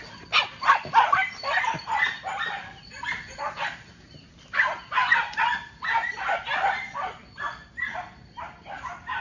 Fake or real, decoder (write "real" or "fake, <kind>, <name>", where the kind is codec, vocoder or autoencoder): real